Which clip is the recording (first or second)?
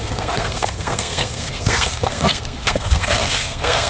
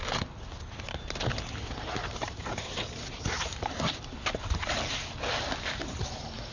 second